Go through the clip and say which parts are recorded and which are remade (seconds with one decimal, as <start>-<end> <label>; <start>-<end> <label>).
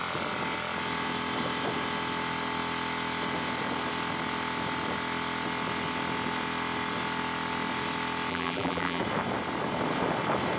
0.0-8.3 recorded; 8.3-9.0 remade; 9.0-10.6 recorded